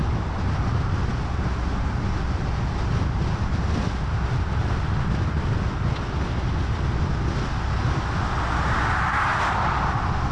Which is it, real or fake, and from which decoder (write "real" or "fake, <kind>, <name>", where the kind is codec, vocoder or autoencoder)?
real